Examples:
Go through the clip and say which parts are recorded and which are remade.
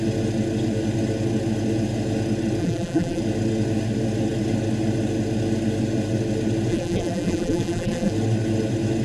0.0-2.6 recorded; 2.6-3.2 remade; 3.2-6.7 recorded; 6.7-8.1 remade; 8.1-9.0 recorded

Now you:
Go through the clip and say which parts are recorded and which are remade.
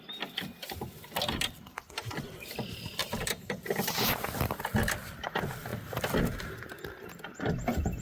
0.0-3.0 recorded; 3.0-4.1 remade; 4.1-8.0 recorded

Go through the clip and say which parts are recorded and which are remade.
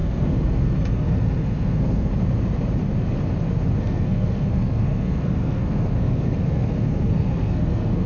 0.0-2.1 remade; 2.1-3.8 recorded; 3.8-8.1 remade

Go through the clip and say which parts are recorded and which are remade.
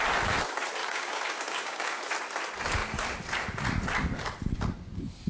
0.0-0.8 recorded; 0.8-2.0 remade; 2.0-5.3 recorded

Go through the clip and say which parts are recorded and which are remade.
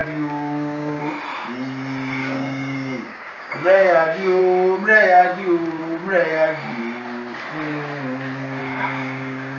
0.0-1.0 remade; 1.0-2.2 recorded; 2.2-4.4 remade; 4.4-5.3 recorded; 5.3-5.8 remade; 5.8-8.6 recorded; 8.6-9.6 remade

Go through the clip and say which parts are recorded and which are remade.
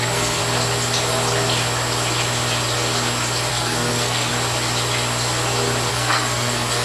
0.0-0.4 remade; 0.4-3.5 recorded; 3.5-4.3 remade; 4.3-5.9 recorded; 5.9-6.8 remade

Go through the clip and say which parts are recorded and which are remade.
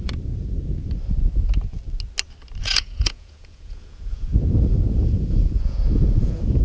0.0-2.6 recorded; 2.6-6.6 remade